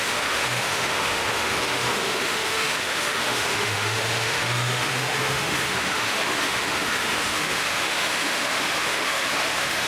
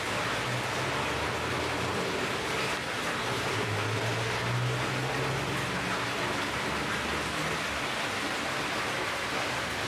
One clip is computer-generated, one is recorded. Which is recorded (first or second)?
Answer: second